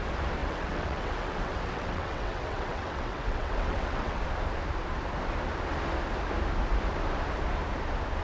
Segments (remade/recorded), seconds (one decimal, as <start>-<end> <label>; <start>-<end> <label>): 0.0-0.4 recorded; 0.4-4.2 remade; 4.2-8.2 recorded